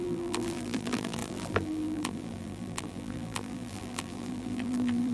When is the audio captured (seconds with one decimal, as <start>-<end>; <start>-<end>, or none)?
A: none